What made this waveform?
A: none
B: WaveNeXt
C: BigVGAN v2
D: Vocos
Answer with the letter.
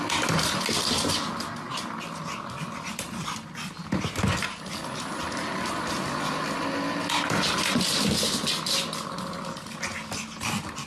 A